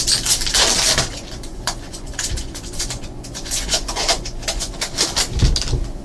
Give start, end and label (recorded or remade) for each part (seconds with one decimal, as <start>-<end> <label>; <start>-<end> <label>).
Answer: 0.0-1.1 recorded; 1.1-4.7 remade; 4.7-6.0 recorded